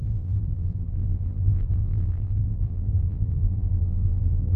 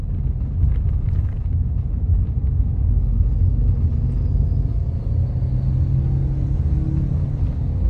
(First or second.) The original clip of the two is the second